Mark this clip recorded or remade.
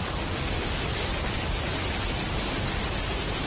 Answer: recorded